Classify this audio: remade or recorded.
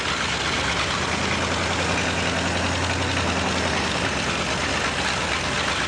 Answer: recorded